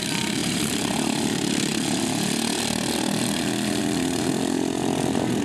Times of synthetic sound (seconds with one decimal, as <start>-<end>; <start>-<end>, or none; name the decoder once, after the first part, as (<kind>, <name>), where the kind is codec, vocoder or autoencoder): 0.4-0.9 (vocoder, BigVGAN v2)